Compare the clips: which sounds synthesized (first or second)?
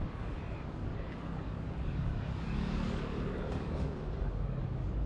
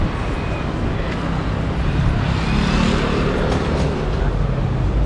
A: first